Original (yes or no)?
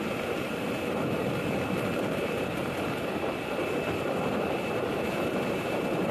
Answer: yes